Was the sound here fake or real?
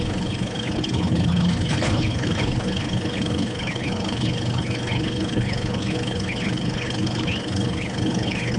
fake